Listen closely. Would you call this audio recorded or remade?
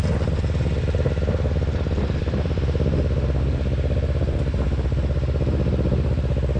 recorded